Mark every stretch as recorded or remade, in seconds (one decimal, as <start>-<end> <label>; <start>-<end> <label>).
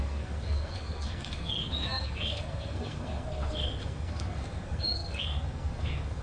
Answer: 0.0-6.2 remade